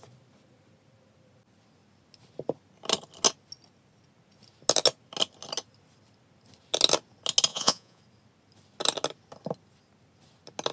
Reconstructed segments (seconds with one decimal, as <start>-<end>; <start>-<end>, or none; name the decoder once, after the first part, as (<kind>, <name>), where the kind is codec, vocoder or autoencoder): 7.5-8.0 (vocoder, Vocos)